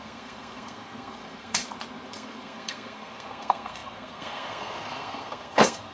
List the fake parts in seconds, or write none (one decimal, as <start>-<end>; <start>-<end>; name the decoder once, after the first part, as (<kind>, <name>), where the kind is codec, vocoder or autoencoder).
0.0-1.6 (codec, SNAC); 2.1-5.9